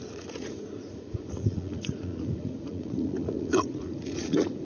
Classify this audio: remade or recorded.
remade